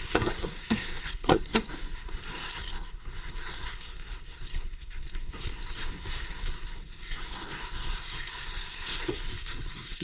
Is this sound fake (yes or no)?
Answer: yes